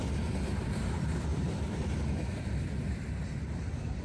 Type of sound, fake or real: fake